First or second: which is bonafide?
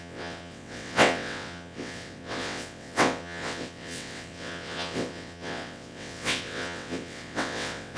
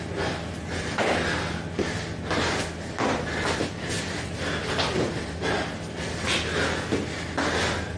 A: second